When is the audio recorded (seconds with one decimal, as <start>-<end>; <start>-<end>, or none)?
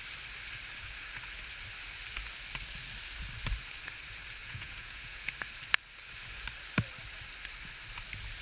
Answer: 0.0-4.4; 5.3-8.4